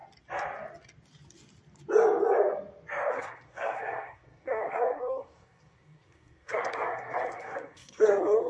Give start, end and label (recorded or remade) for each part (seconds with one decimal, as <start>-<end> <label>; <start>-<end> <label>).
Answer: 0.0-3.1 recorded; 3.1-8.5 remade

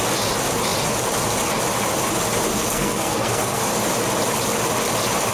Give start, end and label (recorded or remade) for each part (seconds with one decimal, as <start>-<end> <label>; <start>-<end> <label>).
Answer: 0.0-2.5 recorded; 2.5-3.6 remade; 3.6-5.3 recorded